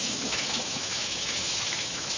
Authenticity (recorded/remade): remade